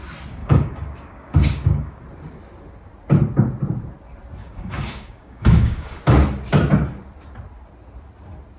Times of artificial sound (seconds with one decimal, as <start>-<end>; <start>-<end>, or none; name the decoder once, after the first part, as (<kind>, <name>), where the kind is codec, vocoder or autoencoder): 0.4-2.0 (codec, DAC); 4.4-6.0